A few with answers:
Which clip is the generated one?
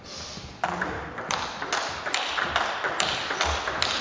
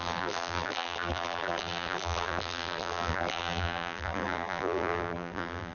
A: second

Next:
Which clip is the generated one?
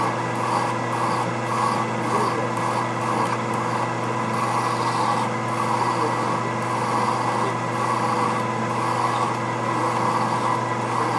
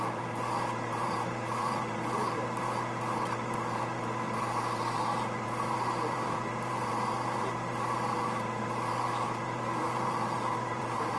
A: second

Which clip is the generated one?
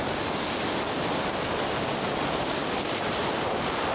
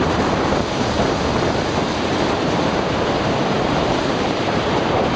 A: second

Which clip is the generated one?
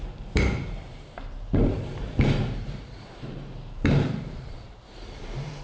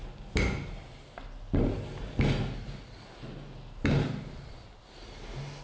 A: first